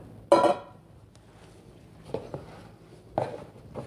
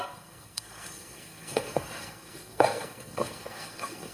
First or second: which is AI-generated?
second